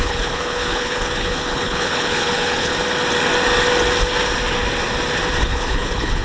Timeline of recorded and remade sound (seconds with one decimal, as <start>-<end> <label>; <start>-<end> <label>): 0.0-2.7 remade; 2.7-5.3 recorded; 5.3-6.2 remade